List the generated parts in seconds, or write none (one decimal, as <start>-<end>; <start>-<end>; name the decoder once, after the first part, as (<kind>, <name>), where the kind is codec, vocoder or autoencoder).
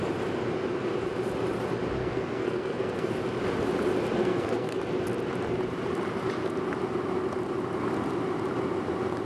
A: 2.0-3.1 (codec, SNAC); 4.2-4.8